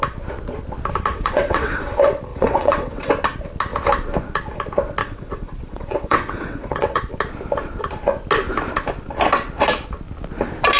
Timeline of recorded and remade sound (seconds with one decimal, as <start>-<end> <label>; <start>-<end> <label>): 0.0-1.1 recorded; 1.1-1.9 remade; 1.9-2.3 recorded; 2.3-3.1 remade; 3.1-5.0 recorded; 5.0-7.0 remade; 7.0-10.8 recorded